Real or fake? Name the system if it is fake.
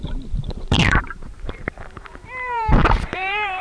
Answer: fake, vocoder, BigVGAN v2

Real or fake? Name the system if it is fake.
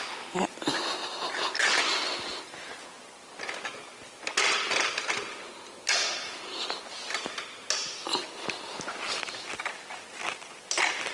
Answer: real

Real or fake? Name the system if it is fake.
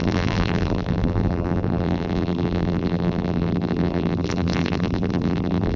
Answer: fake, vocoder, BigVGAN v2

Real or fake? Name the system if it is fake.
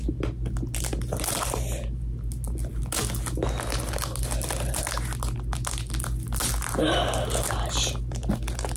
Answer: real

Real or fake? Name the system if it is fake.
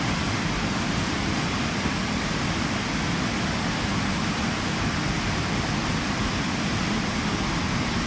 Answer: fake, vocoder, BigVGAN v2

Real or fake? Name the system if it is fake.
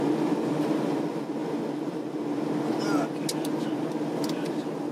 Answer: real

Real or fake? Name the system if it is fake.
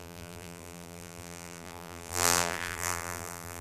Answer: fake, vocoder, BigVGAN v2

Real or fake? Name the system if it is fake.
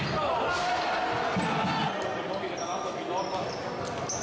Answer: real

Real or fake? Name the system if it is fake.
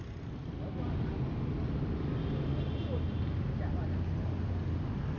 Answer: real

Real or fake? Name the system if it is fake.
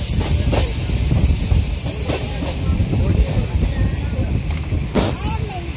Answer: fake, vocoder, BigVGAN v2